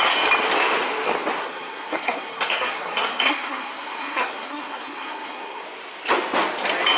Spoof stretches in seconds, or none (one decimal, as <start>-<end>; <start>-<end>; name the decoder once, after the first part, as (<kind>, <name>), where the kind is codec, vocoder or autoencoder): 1.4-5.6 (codec, SNAC)